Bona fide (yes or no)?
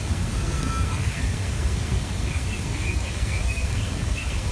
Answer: no